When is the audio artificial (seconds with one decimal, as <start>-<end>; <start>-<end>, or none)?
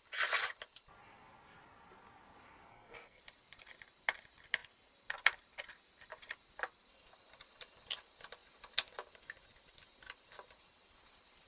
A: 2.7-3.2